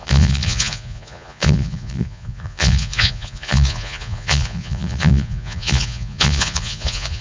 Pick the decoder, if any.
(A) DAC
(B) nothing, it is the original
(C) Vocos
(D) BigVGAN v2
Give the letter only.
C